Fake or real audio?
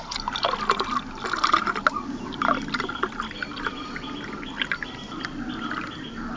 real